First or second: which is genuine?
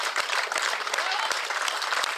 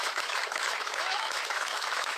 first